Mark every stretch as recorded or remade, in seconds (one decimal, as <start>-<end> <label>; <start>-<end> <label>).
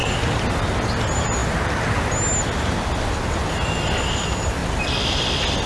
0.0-5.7 recorded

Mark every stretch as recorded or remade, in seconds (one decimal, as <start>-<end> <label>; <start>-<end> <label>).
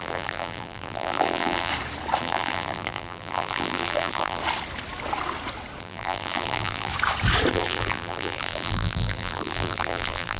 0.0-1.7 remade; 1.7-2.2 recorded; 2.2-4.4 remade; 4.4-5.8 recorded; 5.8-6.9 remade; 6.9-7.5 recorded; 7.5-10.4 remade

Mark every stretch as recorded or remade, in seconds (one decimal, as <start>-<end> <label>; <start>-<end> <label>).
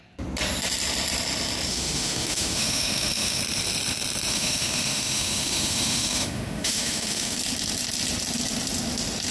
0.0-1.7 recorded; 1.7-3.4 remade; 3.4-4.3 recorded; 4.3-7.4 remade; 7.4-9.3 recorded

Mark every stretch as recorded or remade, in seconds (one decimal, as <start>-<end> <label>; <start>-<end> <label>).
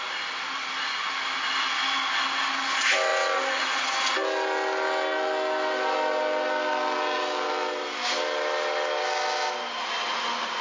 0.0-10.6 recorded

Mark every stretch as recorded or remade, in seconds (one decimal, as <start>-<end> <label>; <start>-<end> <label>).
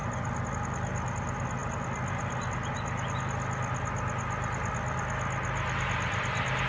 0.0-6.7 recorded